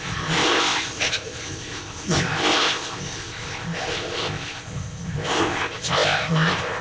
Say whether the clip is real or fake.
fake